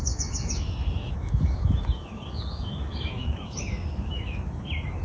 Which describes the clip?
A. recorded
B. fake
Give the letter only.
B